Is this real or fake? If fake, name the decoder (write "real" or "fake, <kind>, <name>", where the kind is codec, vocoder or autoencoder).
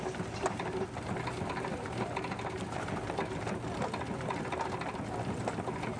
real